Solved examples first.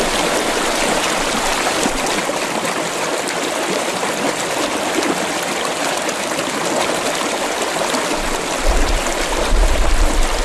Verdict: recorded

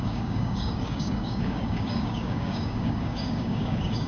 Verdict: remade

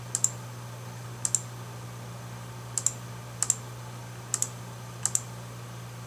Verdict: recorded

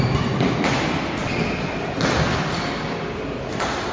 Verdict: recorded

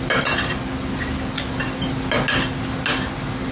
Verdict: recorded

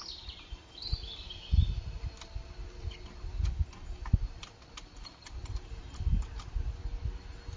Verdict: recorded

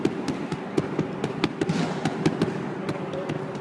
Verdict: recorded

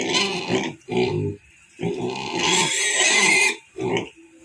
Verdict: recorded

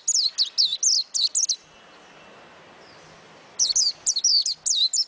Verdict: recorded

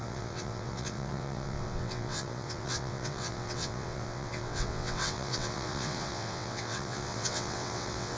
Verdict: remade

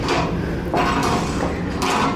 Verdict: recorded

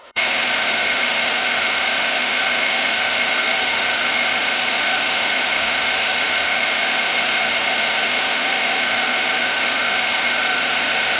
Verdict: remade